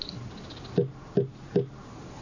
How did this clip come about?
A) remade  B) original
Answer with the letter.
B